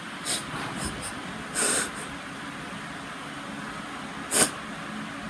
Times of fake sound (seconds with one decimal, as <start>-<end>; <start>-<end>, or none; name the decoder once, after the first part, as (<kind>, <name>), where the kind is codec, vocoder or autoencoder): 0.0-4.1 (vocoder, BigVGAN v2)